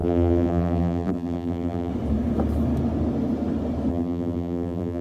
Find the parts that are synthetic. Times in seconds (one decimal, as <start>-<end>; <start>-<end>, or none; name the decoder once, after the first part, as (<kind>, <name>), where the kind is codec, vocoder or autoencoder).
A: 0.0-1.9 (vocoder, BigVGAN v2); 3.9-5.0